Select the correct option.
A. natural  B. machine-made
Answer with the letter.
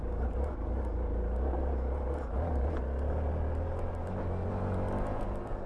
A